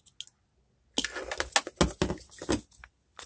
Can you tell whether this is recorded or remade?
recorded